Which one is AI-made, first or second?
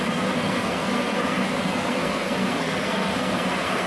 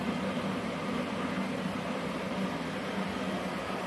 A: first